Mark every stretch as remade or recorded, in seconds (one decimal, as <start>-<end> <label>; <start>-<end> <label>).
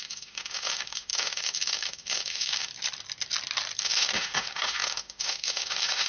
0.0-2.7 remade; 2.7-3.8 recorded; 3.8-6.1 remade